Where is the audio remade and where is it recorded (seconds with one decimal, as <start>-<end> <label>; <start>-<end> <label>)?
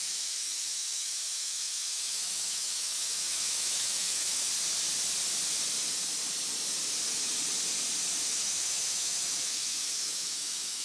0.0-4.5 remade; 4.5-8.3 recorded; 8.3-10.8 remade